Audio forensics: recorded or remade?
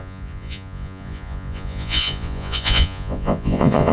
remade